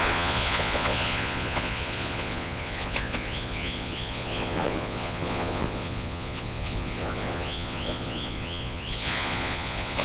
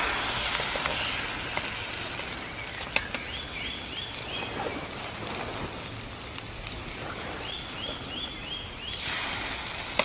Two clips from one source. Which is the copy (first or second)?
first